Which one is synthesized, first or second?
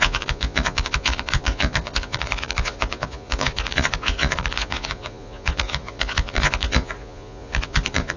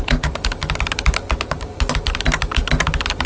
first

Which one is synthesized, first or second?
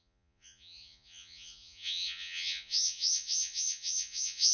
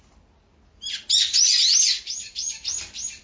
first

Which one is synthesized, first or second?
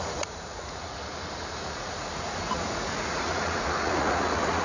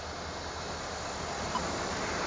first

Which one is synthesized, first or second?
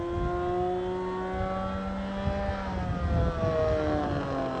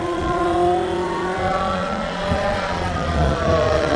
second